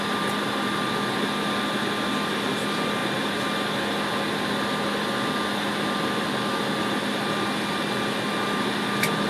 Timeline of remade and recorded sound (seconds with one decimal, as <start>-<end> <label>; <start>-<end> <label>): 0.0-9.3 recorded